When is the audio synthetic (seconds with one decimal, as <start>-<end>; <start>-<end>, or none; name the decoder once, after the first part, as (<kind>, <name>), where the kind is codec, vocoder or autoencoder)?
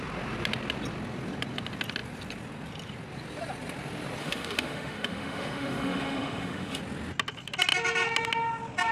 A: 4.2-6.8 (autoencoder, DAC-VAE)